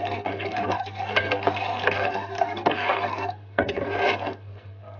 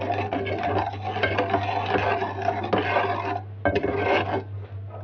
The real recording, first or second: second